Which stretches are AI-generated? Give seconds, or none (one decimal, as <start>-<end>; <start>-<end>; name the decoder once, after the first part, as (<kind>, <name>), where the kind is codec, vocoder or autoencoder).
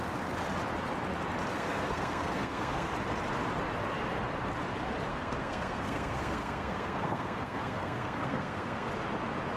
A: 1.5-2.9 (codec, SNAC); 5.1-8.9